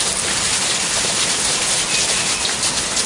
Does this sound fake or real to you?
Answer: real